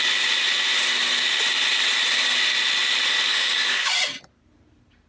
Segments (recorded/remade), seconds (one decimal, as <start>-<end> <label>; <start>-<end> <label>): 0.0-3.3 recorded; 3.3-3.9 remade; 3.9-5.1 recorded